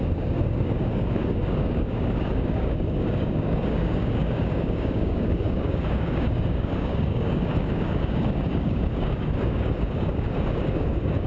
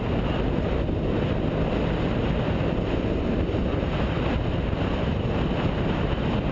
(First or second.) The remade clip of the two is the first